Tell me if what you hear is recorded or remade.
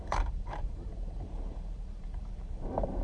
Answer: remade